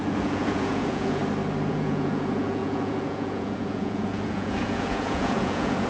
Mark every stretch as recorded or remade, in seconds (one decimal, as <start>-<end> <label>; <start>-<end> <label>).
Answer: 0.0-1.2 remade; 1.2-1.7 recorded; 1.7-5.9 remade